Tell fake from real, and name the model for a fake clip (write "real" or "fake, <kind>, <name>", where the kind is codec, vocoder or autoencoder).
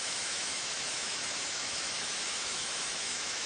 fake, autoencoder, DAC-VAE